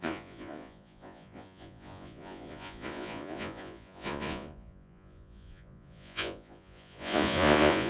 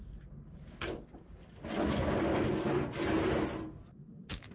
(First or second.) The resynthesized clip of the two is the first